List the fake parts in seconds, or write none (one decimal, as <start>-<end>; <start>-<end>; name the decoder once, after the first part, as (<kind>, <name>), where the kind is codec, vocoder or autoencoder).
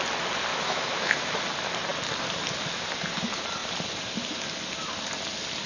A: 0.5-1.3 (autoencoder, DAC-VAE)